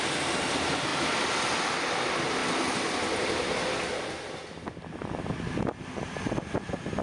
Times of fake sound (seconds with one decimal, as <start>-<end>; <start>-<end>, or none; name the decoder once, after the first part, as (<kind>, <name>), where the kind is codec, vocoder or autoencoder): none